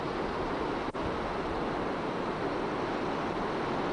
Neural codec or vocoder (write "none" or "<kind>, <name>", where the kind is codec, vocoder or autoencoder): none